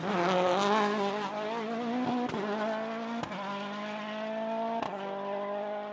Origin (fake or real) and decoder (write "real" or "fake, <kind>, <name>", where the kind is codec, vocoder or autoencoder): real